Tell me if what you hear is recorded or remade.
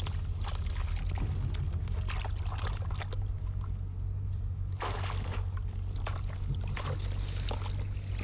recorded